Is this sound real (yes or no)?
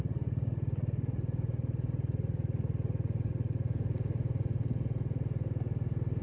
yes